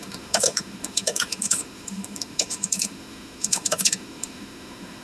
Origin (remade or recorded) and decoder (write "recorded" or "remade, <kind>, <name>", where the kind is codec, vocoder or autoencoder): remade, autoencoder, DAC-VAE